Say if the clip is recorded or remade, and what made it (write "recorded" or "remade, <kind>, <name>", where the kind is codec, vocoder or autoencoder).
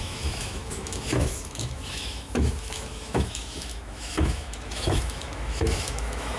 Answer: remade, autoencoder, DAC-VAE